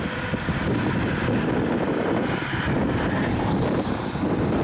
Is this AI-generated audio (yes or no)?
no